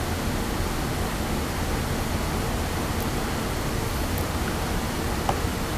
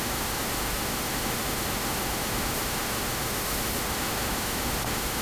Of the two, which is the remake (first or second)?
second